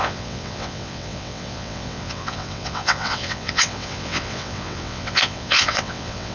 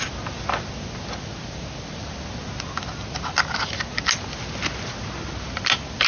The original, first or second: second